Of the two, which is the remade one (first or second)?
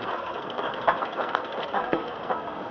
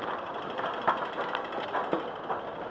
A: first